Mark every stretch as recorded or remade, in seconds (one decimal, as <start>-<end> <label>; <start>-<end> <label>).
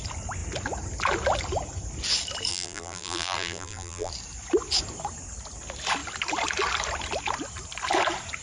0.0-2.5 recorded; 2.5-4.1 remade; 4.1-8.4 recorded